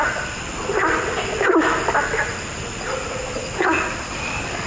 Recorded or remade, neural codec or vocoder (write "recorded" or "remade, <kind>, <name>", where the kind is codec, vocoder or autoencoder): recorded